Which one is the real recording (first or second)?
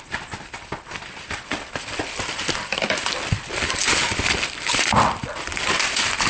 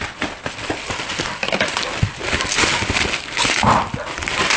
second